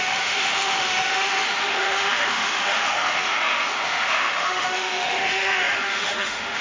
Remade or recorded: remade